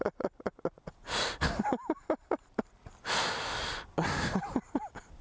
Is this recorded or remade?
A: recorded